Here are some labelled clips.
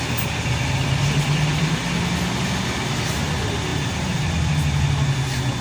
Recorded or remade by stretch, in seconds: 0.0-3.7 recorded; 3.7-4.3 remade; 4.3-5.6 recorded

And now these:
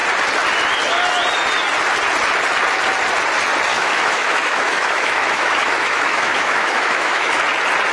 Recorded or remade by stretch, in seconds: 0.0-3.7 recorded; 3.7-7.4 remade; 7.4-7.9 recorded

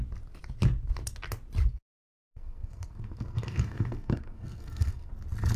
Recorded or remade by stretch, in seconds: 0.0-1.7 recorded; 1.7-5.1 remade; 5.1-5.6 recorded

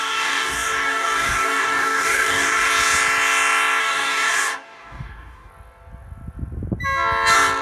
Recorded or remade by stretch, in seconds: 0.0-2.7 remade; 2.7-3.8 recorded; 3.8-5.5 remade; 5.5-7.6 recorded

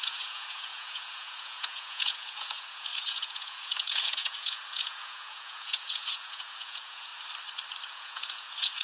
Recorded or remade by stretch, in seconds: 0.0-7.1 remade; 7.1-7.9 recorded; 7.9-8.8 remade

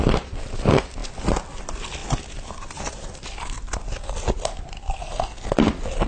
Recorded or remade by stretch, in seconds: 0.0-6.1 recorded

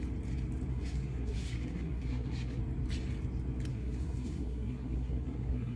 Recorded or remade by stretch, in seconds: 0.0-0.7 recorded; 0.7-2.6 remade; 2.6-3.7 recorded; 3.7-5.8 remade